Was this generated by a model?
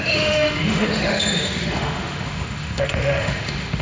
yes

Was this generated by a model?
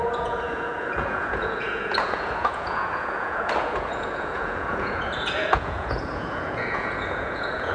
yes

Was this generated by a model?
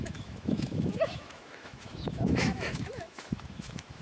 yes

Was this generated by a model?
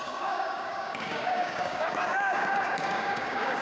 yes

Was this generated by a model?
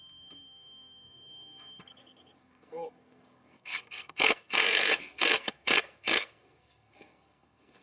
yes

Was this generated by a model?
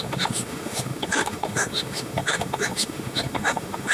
yes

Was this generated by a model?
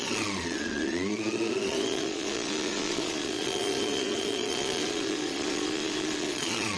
yes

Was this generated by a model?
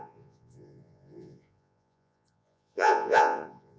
yes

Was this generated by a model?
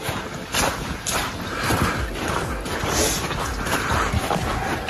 no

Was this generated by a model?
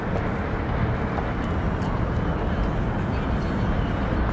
no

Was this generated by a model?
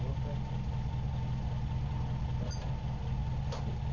no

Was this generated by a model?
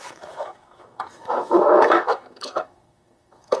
yes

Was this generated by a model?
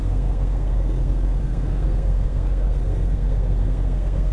yes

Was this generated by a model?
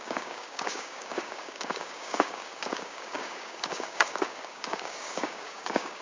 yes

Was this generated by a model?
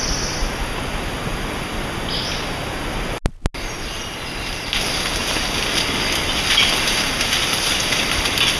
no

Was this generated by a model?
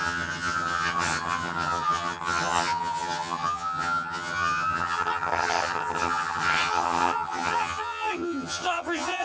yes